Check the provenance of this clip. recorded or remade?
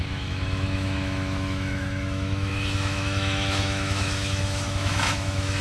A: remade